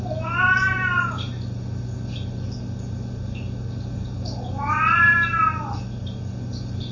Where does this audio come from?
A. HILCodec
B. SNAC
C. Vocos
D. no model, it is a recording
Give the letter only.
D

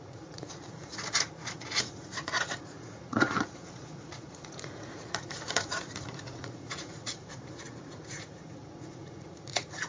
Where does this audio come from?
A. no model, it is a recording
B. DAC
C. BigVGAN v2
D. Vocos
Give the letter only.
D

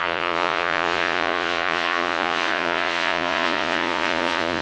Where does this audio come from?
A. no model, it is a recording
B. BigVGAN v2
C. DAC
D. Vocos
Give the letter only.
D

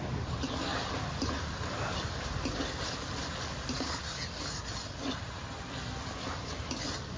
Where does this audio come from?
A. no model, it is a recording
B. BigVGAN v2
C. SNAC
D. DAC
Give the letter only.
A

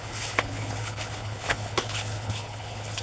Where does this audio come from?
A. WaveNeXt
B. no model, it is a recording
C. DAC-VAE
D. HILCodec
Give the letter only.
D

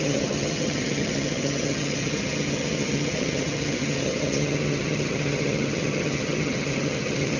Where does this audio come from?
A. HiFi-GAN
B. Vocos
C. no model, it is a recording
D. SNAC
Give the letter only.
A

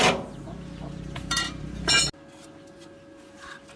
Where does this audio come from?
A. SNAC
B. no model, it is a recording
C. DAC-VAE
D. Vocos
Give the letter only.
B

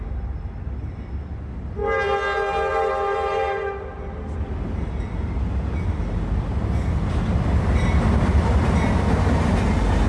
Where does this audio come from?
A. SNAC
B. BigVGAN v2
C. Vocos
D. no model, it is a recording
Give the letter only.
D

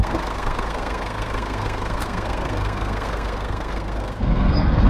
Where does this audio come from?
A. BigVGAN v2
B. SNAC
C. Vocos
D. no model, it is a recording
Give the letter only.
B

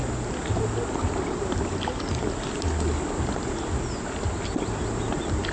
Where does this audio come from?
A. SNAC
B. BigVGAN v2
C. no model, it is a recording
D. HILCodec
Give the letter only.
C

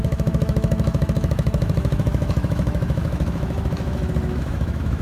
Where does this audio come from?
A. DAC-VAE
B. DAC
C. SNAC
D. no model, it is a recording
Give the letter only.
A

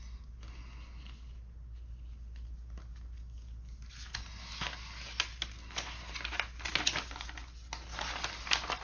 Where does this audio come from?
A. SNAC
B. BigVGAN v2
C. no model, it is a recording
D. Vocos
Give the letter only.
C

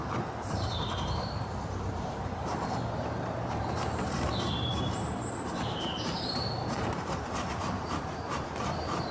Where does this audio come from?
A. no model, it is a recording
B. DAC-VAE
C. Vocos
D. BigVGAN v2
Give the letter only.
D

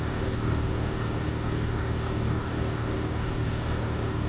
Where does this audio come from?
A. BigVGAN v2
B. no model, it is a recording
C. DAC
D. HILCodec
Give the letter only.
C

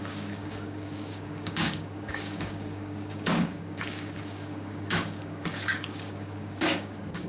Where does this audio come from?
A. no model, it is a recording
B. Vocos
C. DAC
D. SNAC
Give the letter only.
C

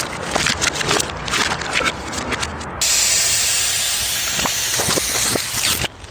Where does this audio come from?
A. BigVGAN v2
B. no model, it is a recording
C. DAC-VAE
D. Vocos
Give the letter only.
B